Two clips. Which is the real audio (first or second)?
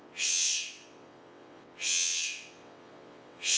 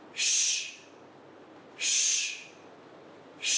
second